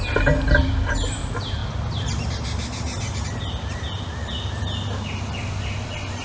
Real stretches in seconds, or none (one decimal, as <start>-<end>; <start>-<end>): 0.0-6.2